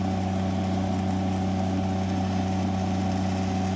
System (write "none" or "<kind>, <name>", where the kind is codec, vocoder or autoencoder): none